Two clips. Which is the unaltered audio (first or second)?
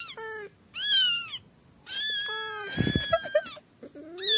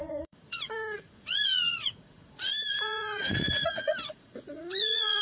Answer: first